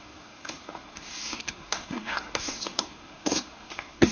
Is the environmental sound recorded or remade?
remade